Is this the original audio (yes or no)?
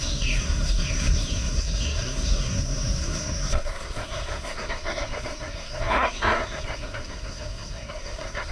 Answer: no